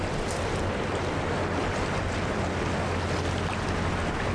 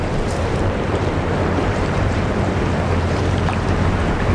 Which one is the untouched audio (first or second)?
first